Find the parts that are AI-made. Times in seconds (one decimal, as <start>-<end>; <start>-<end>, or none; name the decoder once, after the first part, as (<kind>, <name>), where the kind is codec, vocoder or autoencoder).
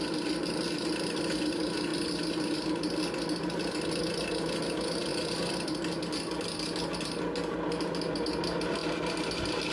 none